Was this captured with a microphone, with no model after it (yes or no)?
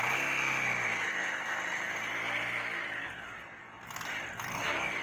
yes